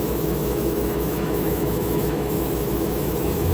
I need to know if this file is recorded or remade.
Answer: remade